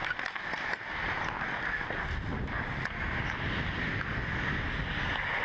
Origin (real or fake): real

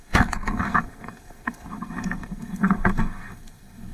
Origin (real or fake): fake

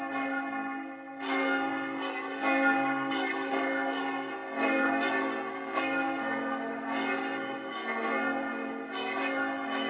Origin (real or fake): fake